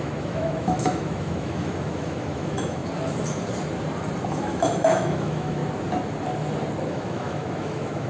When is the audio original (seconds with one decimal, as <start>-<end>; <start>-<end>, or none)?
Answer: 2.8-4.4; 5.6-6.9